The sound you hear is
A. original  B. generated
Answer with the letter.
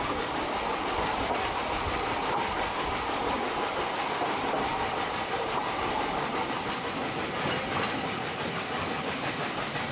A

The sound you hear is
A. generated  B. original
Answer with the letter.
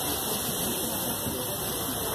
B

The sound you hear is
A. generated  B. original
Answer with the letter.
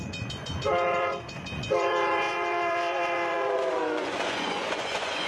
A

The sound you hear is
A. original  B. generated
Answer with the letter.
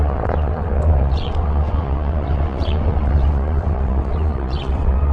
B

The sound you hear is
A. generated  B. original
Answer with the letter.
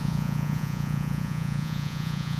A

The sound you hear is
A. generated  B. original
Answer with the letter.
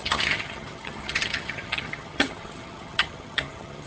A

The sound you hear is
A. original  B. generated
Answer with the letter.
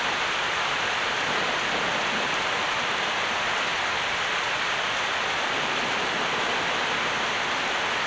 B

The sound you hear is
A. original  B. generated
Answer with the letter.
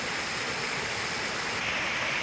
A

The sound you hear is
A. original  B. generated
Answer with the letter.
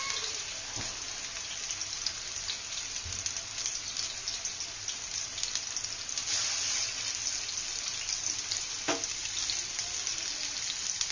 A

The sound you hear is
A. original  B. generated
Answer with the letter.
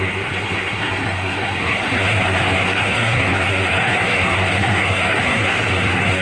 B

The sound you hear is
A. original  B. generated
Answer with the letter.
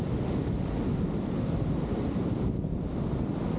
A